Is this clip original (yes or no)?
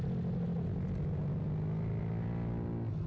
yes